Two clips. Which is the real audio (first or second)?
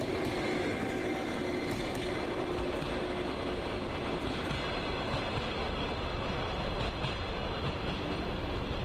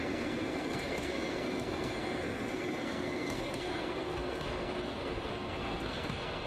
first